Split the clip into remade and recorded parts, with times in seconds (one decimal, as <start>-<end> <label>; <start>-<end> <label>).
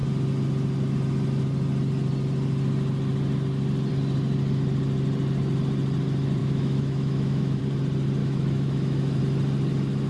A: 0.0-6.4 recorded; 6.4-7.6 remade; 7.6-8.2 recorded; 8.2-9.2 remade; 9.2-10.1 recorded